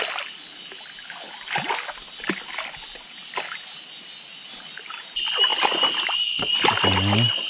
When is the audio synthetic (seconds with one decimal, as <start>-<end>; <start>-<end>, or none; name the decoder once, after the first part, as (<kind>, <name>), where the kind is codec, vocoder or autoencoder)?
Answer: none